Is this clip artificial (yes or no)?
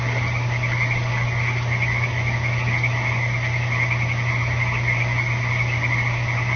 no